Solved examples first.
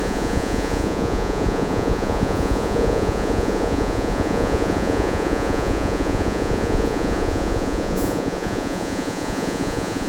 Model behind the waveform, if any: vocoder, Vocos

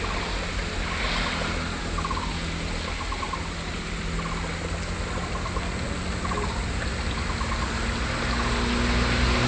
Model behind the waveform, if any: none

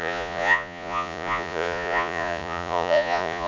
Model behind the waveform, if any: vocoder, Vocos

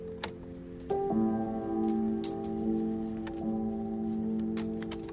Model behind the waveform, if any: none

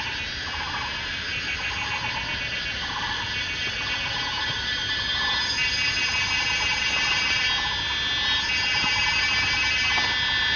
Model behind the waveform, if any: none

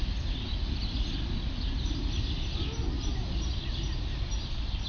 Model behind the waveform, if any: none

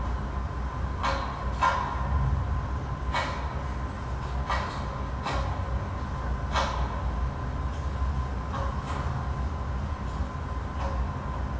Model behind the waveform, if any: none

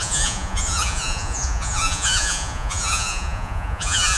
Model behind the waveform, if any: vocoder, Vocos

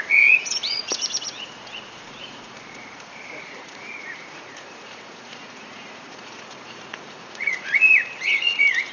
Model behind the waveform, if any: vocoder, Vocos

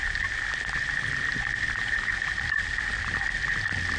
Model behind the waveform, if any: none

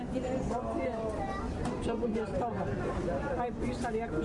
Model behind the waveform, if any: none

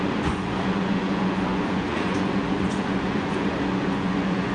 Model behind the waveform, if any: vocoder, Vocos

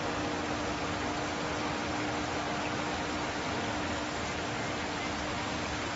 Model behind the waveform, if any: none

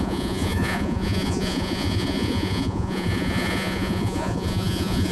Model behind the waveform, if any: vocoder, Vocos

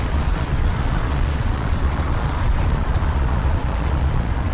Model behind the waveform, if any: vocoder, Vocos